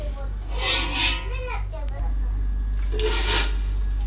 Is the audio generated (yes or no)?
no